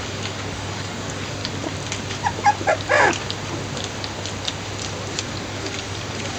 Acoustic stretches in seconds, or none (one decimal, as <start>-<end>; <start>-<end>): 1.4-5.2